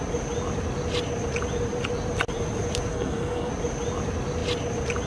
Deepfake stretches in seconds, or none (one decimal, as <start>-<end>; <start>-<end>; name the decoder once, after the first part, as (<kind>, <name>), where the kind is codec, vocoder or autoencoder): 2.9-3.5 (codec, SNAC)